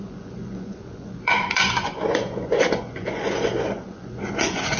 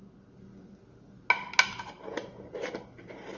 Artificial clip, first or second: first